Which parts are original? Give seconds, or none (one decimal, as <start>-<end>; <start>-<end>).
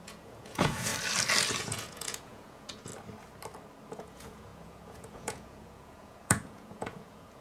0.9-1.6; 2.9-3.9